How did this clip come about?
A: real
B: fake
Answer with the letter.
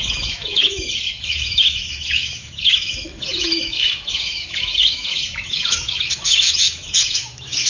B